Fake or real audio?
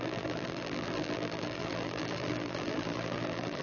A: fake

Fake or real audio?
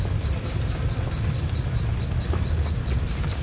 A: real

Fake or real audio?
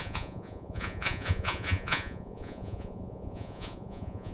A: fake